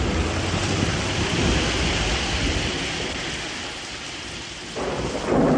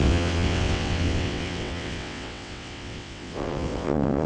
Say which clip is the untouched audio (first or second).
first